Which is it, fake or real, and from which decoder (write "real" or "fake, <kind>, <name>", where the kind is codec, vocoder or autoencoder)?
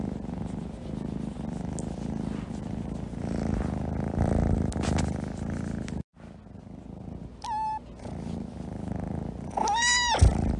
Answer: real